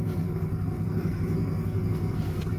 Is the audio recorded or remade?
remade